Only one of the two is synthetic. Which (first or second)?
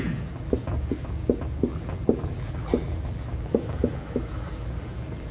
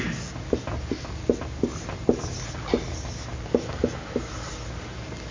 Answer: first